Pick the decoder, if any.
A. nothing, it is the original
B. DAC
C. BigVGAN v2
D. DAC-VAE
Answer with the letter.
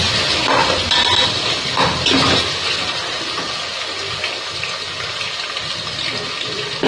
A